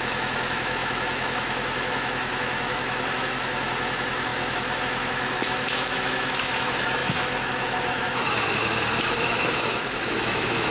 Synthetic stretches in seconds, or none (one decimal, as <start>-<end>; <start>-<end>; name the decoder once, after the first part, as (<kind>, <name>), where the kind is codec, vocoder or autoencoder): 0.0-10.7 (autoencoder, DAC-VAE)